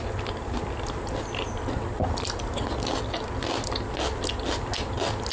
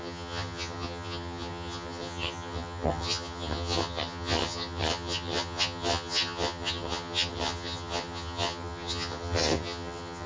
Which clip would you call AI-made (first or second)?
second